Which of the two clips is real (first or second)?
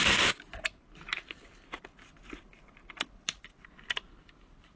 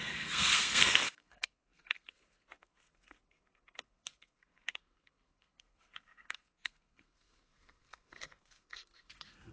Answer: first